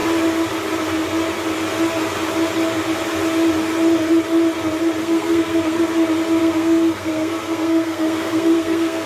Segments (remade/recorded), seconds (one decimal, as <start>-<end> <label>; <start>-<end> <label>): 0.0-5.0 recorded; 5.0-5.8 remade; 5.8-6.4 recorded; 6.4-9.1 remade